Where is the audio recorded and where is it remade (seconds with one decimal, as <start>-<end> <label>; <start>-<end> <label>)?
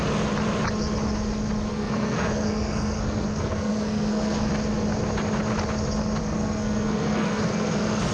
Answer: 0.0-1.7 recorded; 1.7-4.5 remade; 4.5-6.2 recorded; 6.2-8.1 remade